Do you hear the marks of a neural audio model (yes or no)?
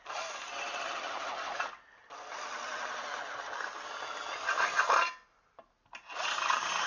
no